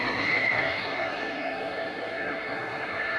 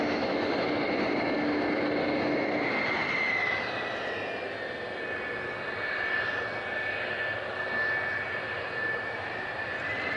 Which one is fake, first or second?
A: first